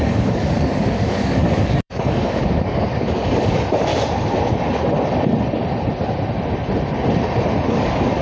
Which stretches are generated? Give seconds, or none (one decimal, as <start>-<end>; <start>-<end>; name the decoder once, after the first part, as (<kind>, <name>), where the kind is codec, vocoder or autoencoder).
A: 0.0-3.9 (codec, DAC); 7.7-8.2